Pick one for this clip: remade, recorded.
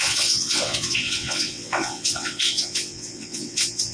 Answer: remade